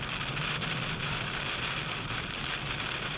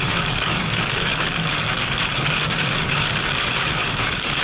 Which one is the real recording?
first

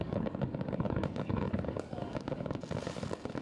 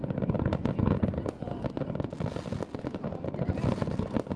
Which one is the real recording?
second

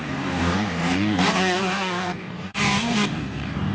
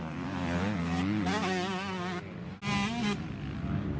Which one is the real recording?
second